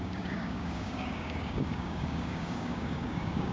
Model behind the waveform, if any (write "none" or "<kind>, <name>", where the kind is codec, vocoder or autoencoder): codec, DAC